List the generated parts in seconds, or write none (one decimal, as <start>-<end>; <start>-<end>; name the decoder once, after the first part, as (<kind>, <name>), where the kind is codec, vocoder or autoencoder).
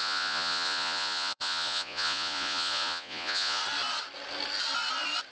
0.0-3.6 (vocoder, Vocos)